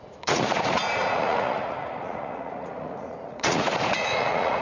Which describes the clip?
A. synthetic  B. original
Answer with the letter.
A